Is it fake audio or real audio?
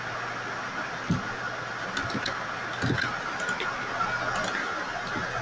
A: real